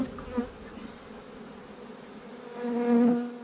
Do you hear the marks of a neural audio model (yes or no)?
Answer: no